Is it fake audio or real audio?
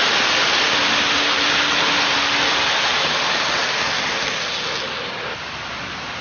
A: real